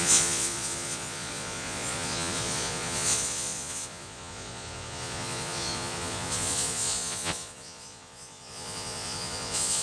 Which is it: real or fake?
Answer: fake